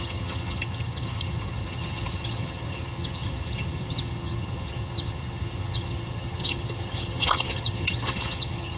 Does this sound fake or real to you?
fake